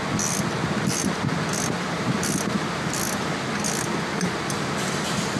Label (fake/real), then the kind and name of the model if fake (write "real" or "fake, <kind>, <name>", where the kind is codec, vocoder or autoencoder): real